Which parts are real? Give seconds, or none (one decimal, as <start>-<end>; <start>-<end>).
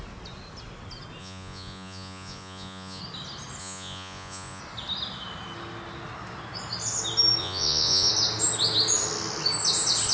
0.0-1.2; 3.0-3.6; 4.6-7.4; 8.1-10.1